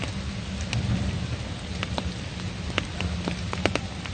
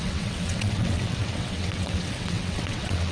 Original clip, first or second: first